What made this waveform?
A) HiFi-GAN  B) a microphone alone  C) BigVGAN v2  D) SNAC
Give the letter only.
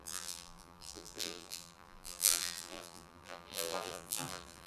C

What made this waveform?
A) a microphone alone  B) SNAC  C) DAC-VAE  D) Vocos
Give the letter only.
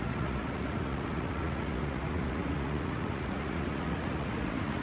D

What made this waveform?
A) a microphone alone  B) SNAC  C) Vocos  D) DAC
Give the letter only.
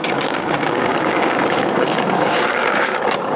D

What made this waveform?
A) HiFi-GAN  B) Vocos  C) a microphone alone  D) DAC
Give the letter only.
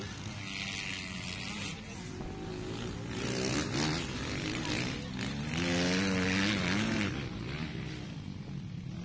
C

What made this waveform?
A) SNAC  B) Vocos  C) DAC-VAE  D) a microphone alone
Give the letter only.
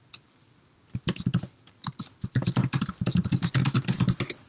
D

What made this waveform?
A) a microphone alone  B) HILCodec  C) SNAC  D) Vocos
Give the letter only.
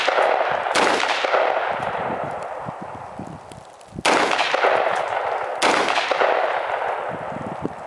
A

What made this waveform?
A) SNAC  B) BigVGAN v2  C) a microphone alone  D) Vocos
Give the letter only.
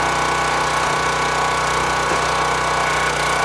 C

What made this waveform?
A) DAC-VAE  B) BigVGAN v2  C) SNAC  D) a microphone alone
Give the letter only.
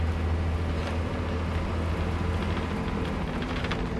D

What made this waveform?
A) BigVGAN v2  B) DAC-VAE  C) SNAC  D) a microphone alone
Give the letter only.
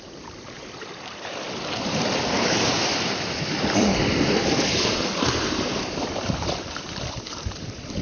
A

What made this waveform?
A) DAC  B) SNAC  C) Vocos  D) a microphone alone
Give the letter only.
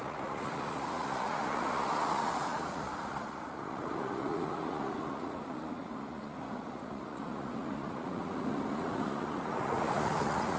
C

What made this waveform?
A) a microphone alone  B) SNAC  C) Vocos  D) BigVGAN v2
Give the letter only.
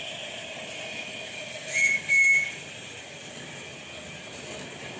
A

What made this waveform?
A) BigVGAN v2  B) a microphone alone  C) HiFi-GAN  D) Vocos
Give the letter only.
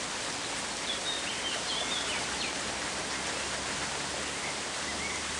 B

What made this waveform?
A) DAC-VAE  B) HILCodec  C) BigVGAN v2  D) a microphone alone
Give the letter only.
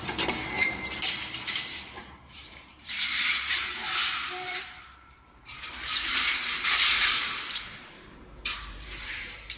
C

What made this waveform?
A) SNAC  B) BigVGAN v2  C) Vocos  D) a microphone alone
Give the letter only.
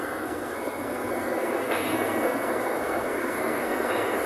A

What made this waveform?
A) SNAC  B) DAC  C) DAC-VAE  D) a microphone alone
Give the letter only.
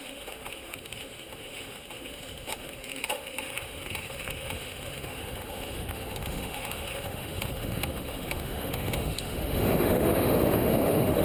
C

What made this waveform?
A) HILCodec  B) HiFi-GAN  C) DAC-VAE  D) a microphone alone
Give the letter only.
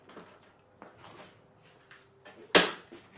D